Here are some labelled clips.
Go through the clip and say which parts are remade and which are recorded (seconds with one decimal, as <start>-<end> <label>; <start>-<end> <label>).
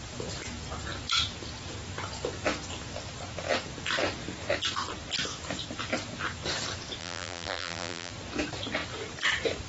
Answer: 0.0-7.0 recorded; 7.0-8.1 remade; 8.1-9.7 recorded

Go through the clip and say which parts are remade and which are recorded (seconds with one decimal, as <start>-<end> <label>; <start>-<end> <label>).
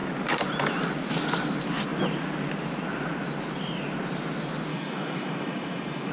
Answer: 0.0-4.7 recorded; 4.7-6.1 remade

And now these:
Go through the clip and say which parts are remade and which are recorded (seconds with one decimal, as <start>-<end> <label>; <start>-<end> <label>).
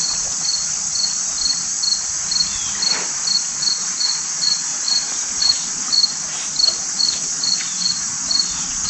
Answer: 0.0-0.5 remade; 0.5-3.3 recorded; 3.3-6.0 remade; 6.0-6.7 recorded; 6.7-8.9 remade